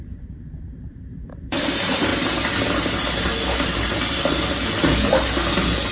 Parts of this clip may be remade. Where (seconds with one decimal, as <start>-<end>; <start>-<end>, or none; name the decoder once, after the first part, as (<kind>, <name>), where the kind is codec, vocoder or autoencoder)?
0.0-2.1 (vocoder, BigVGAN v2)